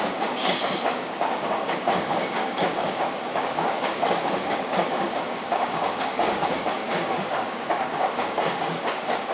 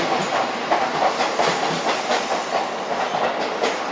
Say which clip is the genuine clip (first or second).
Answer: second